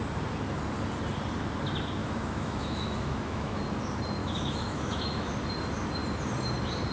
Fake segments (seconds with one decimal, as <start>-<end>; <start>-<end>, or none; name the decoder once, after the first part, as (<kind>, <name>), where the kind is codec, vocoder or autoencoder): 2.0-3.6 (autoencoder, DAC-VAE); 4.2-5.3